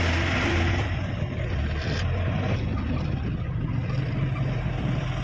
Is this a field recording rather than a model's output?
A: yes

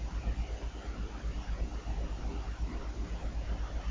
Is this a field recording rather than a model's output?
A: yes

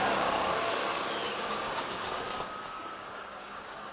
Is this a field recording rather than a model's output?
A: no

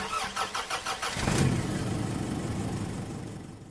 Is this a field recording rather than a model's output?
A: yes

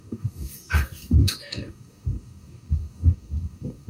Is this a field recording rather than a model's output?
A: no